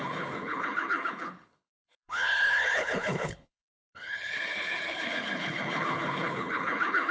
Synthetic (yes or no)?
yes